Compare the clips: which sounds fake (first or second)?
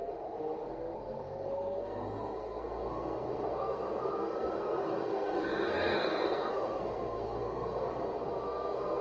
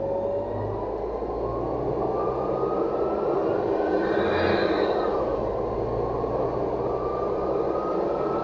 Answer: first